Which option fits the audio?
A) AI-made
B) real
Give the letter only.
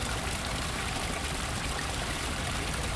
B